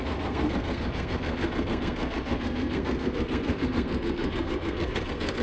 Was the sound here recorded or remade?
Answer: remade